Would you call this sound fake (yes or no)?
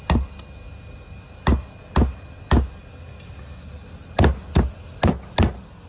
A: no